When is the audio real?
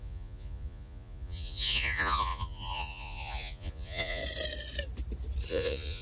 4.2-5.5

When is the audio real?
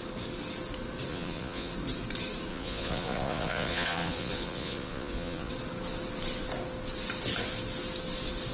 0.0-1.1; 1.7-2.5; 5.5-8.5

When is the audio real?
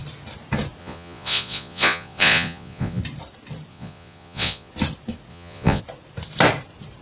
0.0-0.8; 3.0-3.7; 4.7-5.3; 5.8-7.0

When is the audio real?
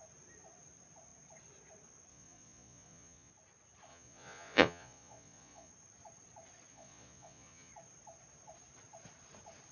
0.0-2.1; 3.3-3.9; 5.7-6.7; 7.7-9.7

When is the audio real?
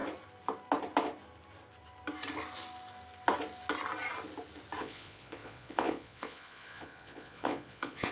0.0-4.8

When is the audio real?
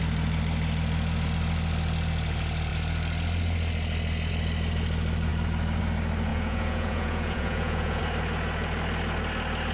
0.0-6.3; 8.0-9.7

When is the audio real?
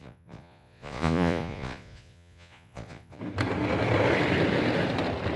3.2-5.4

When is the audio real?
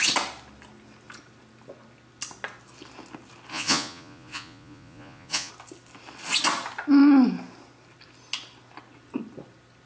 0.0-3.5; 5.5-9.9